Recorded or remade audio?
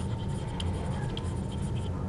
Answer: recorded